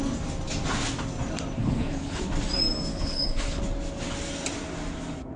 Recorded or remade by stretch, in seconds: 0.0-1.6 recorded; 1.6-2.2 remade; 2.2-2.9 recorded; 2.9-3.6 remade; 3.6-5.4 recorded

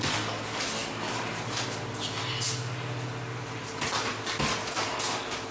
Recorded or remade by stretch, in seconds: 0.0-5.5 recorded

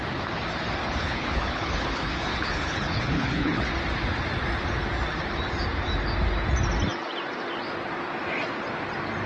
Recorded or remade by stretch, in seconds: 0.0-0.8 recorded; 0.8-3.7 remade; 3.7-9.3 recorded

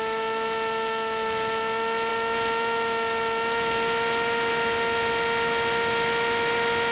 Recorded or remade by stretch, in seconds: 0.0-6.9 recorded

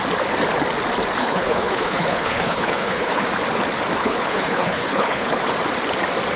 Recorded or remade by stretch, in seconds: 0.0-1.2 recorded; 1.2-3.2 remade; 3.2-4.0 recorded; 4.0-5.4 remade; 5.4-6.4 recorded

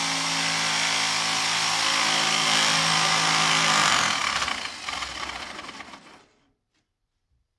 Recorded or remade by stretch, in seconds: 0.0-7.6 recorded

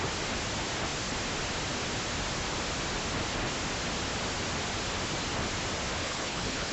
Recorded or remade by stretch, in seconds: 0.0-6.0 recorded; 6.0-6.7 remade

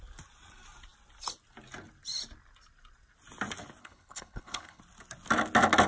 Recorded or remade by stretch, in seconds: 0.0-3.8 recorded; 3.8-4.8 remade; 4.8-5.9 recorded